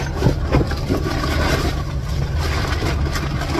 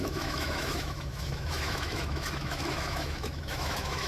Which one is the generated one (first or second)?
second